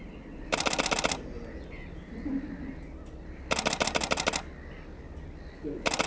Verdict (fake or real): real